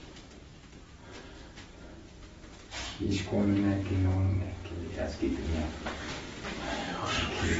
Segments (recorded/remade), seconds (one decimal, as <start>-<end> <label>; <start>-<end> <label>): 0.0-7.6 recorded